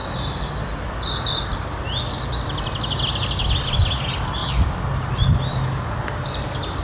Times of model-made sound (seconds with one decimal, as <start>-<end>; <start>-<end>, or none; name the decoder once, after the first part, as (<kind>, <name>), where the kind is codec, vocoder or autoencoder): none